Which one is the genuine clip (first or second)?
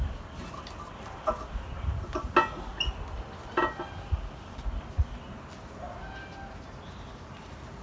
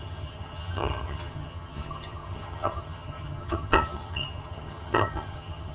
first